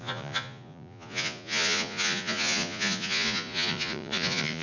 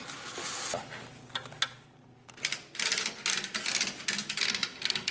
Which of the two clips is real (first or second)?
second